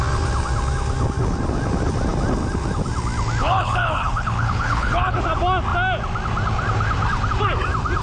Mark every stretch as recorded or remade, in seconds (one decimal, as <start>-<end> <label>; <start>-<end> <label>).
0.0-3.4 recorded; 3.4-5.2 remade; 5.2-8.0 recorded